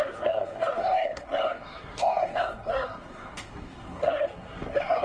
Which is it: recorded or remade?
remade